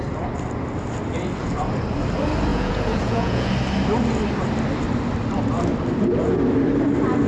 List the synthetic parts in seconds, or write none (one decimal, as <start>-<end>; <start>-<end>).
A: 2.5-3.5